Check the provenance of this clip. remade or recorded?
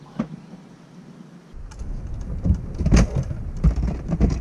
recorded